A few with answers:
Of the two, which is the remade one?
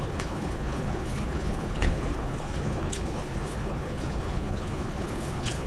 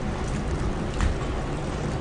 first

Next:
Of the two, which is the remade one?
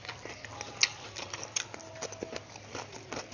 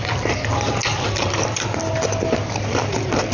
second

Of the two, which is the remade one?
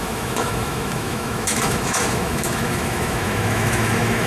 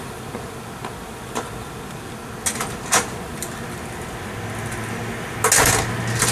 first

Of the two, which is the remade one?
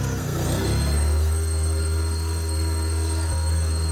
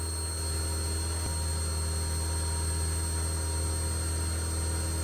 first